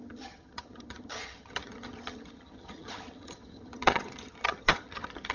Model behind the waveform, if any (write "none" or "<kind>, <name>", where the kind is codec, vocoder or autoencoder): vocoder, HiFi-GAN